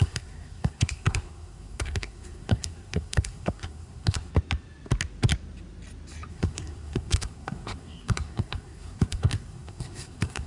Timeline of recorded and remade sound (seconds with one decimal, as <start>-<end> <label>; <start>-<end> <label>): 0.0-4.3 remade; 4.3-6.3 recorded; 6.3-10.5 remade